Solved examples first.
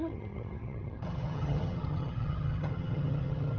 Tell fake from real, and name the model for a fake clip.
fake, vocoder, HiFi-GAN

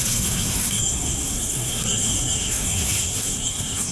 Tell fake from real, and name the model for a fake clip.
fake, codec, SNAC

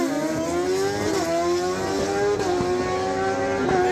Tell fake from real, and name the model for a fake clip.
real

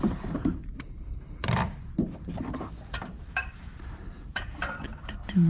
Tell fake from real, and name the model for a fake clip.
fake, vocoder, BigVGAN v2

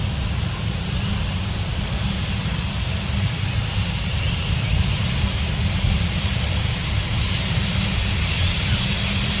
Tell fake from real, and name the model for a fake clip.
real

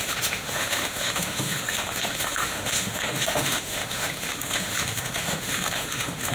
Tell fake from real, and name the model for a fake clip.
fake, autoencoder, DAC-VAE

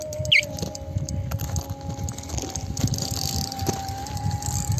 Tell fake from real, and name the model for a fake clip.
real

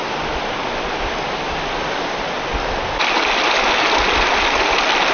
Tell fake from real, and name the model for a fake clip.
real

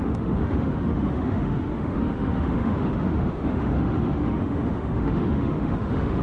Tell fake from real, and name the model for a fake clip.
fake, autoencoder, DAC-VAE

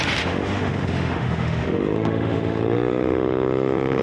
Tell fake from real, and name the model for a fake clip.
fake, autoencoder, DAC-VAE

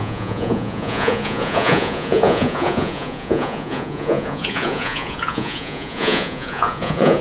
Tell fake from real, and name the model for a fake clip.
fake, vocoder, Vocos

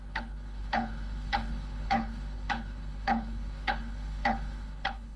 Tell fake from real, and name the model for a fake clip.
fake, codec, HILCodec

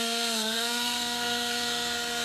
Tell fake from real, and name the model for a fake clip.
fake, codec, SNAC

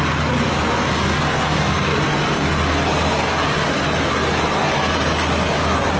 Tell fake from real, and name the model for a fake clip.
real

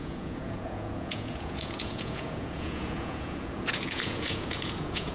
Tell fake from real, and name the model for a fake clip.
fake, vocoder, Vocos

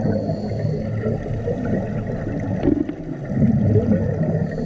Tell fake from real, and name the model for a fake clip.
real